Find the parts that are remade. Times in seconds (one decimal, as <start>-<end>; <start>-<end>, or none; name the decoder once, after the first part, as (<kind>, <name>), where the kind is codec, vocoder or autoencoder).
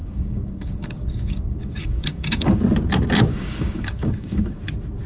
0.0-2.6 (codec, DAC); 3.3-4.6